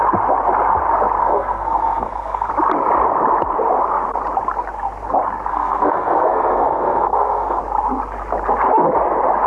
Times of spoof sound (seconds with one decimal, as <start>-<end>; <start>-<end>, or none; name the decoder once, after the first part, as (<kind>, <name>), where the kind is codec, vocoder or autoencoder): 1.2-2.5 (codec, SNAC); 5.5-7.6